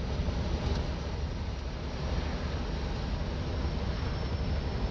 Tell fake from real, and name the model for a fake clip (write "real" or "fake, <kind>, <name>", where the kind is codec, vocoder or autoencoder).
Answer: real